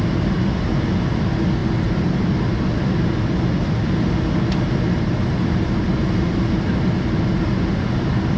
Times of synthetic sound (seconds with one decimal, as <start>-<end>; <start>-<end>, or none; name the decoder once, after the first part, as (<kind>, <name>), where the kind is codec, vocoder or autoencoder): none